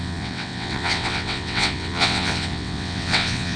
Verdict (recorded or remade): remade